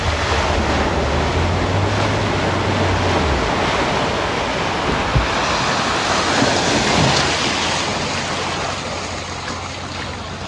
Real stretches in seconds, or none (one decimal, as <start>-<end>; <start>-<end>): 0.0-10.5